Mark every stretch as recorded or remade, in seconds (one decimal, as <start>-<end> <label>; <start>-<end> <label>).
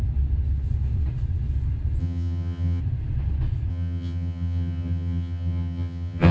0.0-2.0 recorded; 2.0-2.8 remade; 2.8-3.7 recorded; 3.7-6.3 remade